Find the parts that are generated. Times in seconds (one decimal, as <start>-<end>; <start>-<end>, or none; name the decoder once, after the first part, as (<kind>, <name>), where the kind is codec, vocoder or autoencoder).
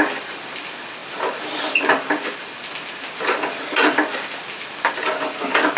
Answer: none